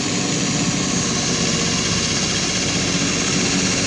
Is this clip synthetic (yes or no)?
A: no